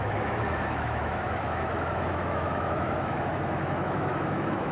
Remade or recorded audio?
remade